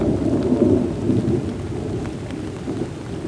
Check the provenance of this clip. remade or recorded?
recorded